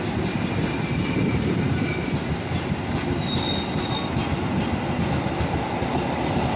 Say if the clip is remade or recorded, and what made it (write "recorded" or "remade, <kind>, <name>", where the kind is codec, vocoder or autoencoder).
recorded